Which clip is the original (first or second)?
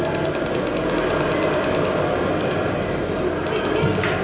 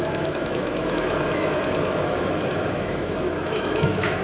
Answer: first